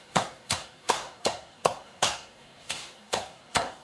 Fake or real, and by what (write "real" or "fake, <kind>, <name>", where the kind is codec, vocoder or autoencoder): fake, codec, SNAC